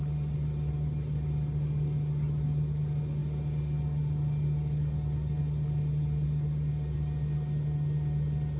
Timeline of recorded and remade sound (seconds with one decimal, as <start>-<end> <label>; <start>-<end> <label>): 0.0-8.6 recorded